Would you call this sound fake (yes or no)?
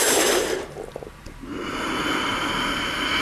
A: no